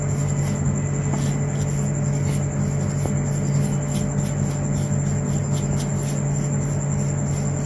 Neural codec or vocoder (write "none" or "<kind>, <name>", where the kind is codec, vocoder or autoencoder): none